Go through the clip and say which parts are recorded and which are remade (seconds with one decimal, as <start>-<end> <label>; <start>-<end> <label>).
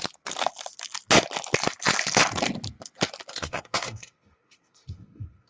0.0-3.3 recorded; 3.3-5.5 remade